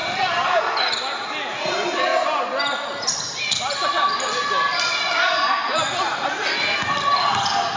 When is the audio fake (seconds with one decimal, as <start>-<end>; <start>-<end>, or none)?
0.0-0.6; 2.1-3.4